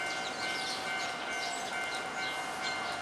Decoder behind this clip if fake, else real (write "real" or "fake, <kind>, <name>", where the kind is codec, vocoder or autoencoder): real